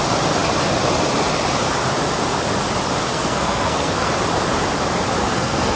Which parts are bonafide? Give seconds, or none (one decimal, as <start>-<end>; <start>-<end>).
0.0-3.1; 4.1-5.2